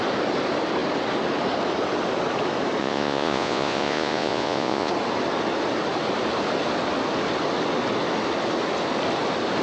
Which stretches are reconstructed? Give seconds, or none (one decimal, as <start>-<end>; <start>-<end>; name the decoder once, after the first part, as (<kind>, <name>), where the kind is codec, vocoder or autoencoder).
2.8-4.9 (vocoder, Vocos)